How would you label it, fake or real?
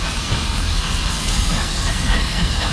fake